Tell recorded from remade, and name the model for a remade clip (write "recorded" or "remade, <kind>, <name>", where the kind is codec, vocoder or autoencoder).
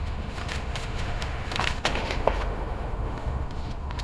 remade, autoencoder, DAC-VAE